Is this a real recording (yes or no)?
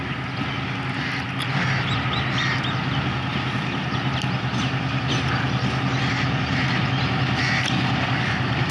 yes